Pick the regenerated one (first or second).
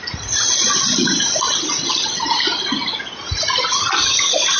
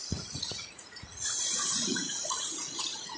second